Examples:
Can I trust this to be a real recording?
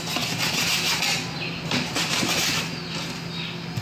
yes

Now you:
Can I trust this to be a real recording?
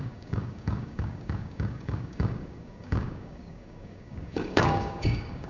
no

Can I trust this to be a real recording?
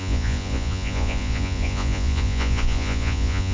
no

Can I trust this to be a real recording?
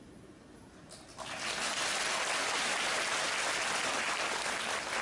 yes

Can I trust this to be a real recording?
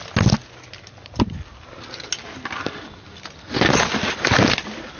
yes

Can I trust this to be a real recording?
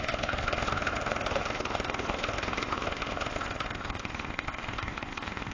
no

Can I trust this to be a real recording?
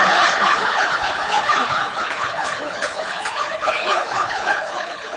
no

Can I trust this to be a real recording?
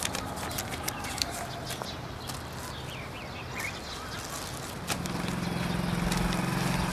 yes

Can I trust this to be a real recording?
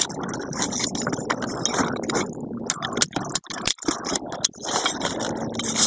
yes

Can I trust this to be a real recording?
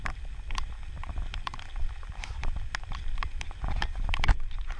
yes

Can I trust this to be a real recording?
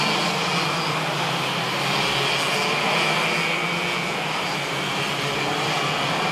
yes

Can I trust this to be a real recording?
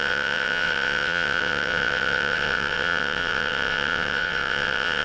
no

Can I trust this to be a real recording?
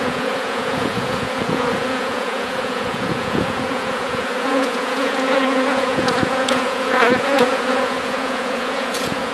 no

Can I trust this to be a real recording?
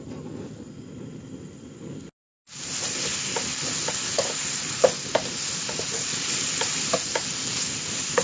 yes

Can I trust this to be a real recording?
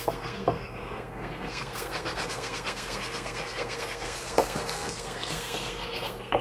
no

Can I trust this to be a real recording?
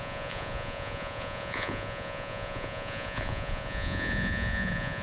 no